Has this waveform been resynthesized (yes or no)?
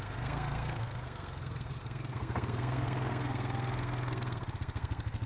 yes